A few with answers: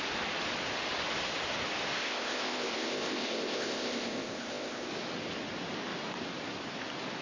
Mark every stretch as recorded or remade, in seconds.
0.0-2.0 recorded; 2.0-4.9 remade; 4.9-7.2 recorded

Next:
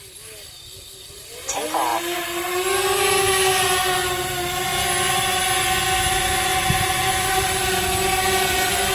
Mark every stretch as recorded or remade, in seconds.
0.0-6.5 recorded; 6.5-8.5 remade; 8.5-8.9 recorded

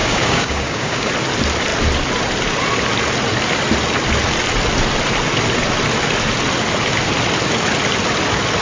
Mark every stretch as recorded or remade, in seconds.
0.0-1.1 remade; 1.1-8.6 recorded

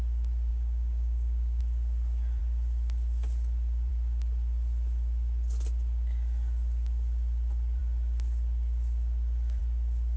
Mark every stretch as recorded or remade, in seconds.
0.0-0.5 recorded; 0.5-1.6 remade; 1.6-10.2 recorded

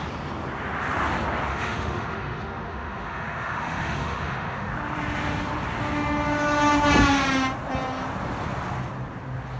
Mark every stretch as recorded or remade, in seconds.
0.0-1.5 recorded; 1.5-4.7 remade; 4.7-9.6 recorded